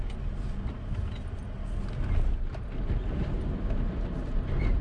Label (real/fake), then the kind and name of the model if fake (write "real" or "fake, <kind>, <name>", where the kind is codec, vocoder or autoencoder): real